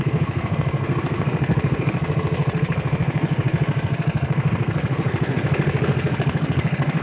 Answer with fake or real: fake